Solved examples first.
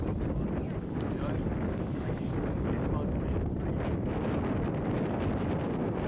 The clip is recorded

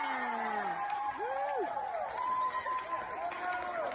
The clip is recorded